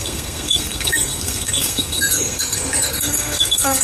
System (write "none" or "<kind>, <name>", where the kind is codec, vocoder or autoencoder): codec, SNAC